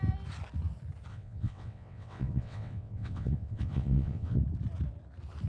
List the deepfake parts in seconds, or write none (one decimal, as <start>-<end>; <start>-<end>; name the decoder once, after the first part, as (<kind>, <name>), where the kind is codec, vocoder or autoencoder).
1.1-4.4 (vocoder, WaveNeXt)